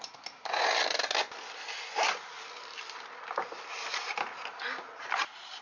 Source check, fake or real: real